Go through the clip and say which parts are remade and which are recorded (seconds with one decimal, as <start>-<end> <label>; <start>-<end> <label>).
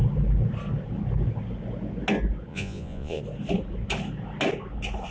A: 0.0-2.5 recorded; 2.5-3.2 remade; 3.2-5.1 recorded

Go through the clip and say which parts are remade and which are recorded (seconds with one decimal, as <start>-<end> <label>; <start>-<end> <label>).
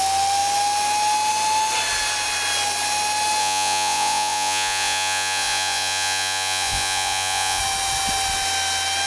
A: 0.0-3.4 recorded; 3.4-7.6 remade; 7.6-9.1 recorded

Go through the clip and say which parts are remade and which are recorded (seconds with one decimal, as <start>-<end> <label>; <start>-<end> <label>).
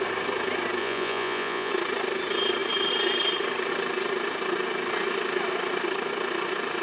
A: 0.0-0.8 recorded; 0.8-1.7 remade; 1.7-6.8 recorded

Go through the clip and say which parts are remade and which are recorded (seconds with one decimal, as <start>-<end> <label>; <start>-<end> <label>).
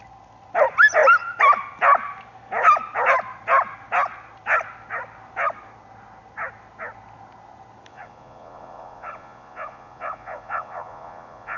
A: 0.0-7.9 recorded; 7.9-11.6 remade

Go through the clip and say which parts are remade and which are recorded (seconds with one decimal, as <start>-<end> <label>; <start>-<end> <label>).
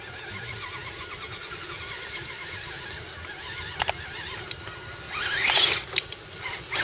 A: 0.0-6.8 recorded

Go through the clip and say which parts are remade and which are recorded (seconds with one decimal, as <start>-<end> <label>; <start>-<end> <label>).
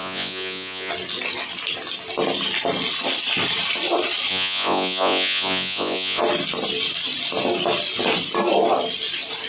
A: 0.0-0.9 remade; 0.9-4.3 recorded; 4.3-6.2 remade; 6.2-9.5 recorded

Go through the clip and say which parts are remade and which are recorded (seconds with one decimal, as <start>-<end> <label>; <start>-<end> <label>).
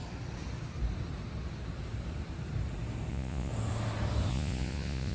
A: 0.0-3.1 recorded; 3.1-3.5 remade; 3.5-4.3 recorded; 4.3-5.1 remade